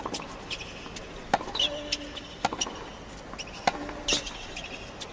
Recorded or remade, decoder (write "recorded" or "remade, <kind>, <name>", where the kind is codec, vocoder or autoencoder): recorded